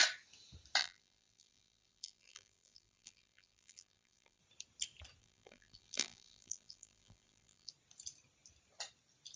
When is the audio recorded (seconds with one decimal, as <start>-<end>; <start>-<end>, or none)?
0.0-0.8; 4.4-5.2; 7.7-9.4